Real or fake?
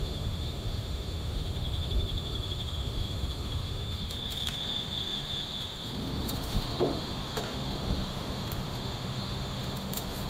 fake